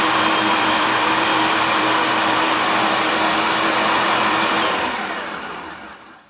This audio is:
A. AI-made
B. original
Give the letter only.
A